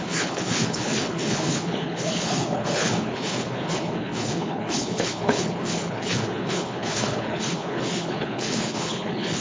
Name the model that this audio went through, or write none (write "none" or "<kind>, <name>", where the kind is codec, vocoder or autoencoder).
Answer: codec, HILCodec